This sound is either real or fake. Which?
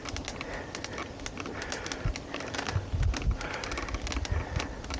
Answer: real